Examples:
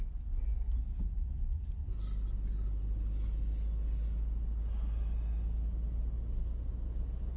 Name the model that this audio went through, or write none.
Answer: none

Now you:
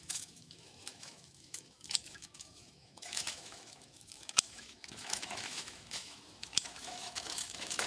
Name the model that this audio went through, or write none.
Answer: autoencoder, DAC-VAE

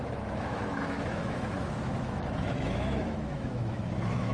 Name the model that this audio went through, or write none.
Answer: autoencoder, DAC-VAE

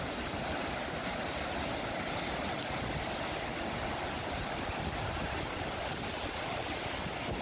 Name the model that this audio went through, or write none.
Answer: none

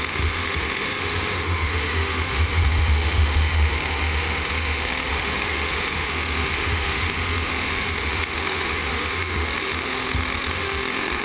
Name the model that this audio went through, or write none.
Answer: autoencoder, DAC-VAE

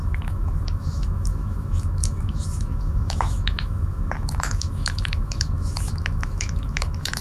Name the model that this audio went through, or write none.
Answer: autoencoder, DAC-VAE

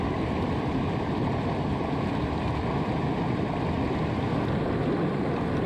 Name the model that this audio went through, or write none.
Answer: none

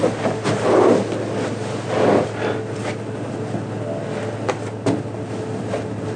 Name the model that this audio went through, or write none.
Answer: none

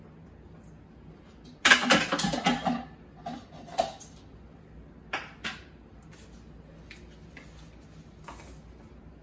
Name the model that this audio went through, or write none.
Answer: none